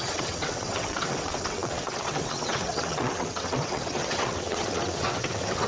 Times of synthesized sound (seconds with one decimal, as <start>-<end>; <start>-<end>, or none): 0.0-5.7